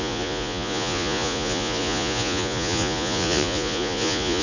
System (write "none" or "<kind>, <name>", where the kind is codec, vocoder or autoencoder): vocoder, Vocos